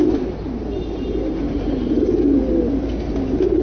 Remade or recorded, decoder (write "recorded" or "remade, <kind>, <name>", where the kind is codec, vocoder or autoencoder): recorded